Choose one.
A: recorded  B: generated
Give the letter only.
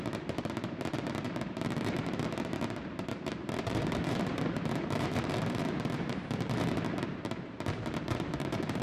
B